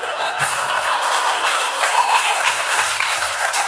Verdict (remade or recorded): remade